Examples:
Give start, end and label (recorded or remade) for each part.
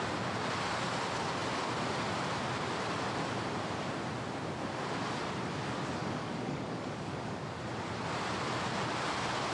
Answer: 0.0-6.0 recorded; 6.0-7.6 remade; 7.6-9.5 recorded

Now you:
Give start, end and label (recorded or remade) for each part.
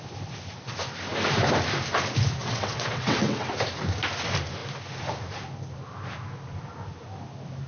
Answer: 0.0-2.4 recorded; 2.4-3.5 remade; 3.5-7.7 recorded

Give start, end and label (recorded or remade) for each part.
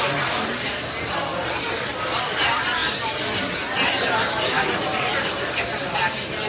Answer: 0.0-6.5 recorded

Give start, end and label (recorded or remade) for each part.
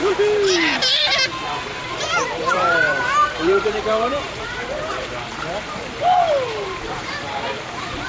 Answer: 0.0-8.1 remade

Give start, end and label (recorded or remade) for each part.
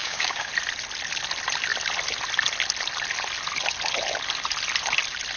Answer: 0.0-0.5 remade; 0.5-5.4 recorded